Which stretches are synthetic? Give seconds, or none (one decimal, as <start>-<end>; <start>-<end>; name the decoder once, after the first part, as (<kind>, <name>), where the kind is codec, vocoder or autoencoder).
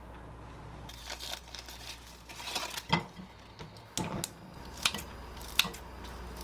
none